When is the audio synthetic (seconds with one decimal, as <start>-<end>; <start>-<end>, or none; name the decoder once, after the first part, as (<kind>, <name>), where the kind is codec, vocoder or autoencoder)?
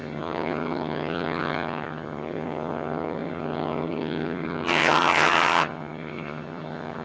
0.0-7.0 (vocoder, HiFi-GAN)